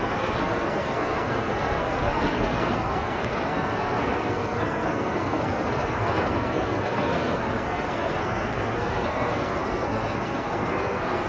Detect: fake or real fake